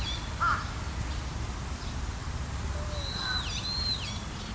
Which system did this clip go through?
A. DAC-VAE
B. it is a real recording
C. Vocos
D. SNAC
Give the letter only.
B